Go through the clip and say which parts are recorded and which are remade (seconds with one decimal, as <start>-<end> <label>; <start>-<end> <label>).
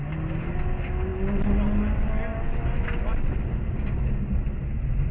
0.0-5.1 recorded